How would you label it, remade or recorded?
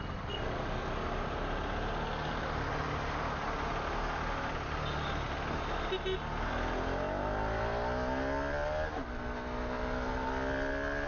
recorded